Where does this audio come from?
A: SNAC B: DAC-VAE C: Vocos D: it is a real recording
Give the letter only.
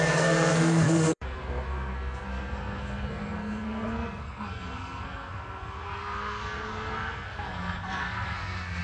A